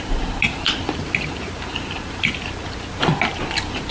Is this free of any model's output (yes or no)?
yes